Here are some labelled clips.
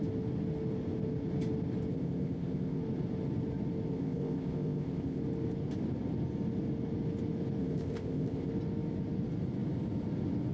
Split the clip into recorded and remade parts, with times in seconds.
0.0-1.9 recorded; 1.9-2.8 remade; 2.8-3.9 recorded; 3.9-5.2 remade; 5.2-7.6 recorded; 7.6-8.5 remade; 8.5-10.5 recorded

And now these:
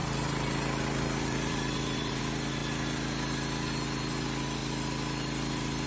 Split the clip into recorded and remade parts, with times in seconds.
0.0-2.2 remade; 2.2-5.9 recorded

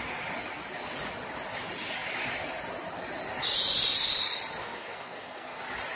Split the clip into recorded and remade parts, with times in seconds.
0.0-4.6 recorded; 4.6-5.6 remade; 5.6-6.0 recorded

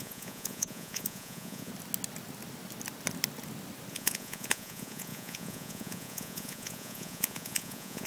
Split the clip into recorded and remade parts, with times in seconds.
0.0-1.7 remade; 1.7-3.9 recorded; 3.9-8.1 remade